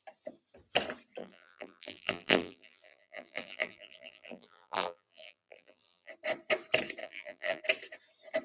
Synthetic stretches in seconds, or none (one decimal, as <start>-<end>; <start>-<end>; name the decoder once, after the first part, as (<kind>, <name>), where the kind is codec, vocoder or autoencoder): 1.2-6.1 (vocoder, BigVGAN v2); 7.0-7.6